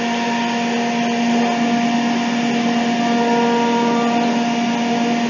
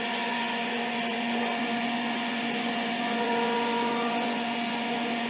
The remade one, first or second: second